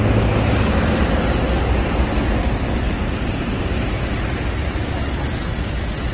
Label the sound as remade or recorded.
recorded